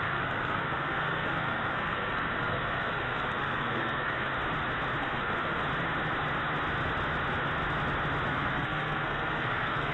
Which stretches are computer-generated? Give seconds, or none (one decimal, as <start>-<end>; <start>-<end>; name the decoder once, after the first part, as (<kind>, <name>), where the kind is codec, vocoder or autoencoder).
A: 0.0-4.3 (codec, SNAC); 5.0-5.6; 8.3-9.9